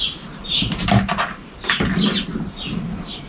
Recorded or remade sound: recorded